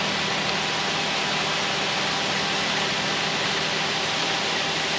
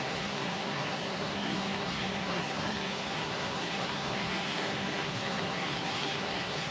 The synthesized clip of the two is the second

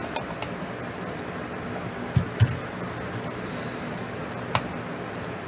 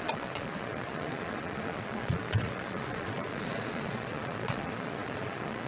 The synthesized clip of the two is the second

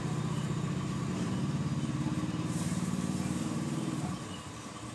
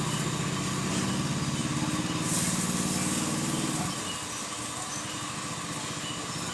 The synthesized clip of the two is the first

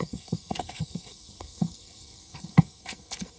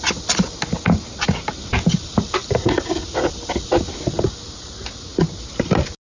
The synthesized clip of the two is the first